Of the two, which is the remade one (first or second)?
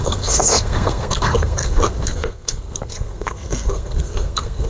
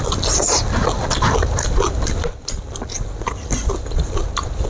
first